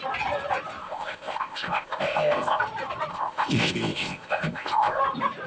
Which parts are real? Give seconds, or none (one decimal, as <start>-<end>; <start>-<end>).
0.0-0.8; 2.6-3.1; 5.0-5.5